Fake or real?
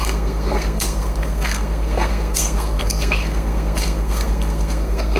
fake